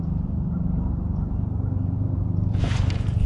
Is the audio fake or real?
fake